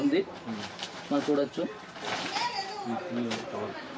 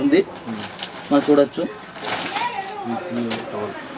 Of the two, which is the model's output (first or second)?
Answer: first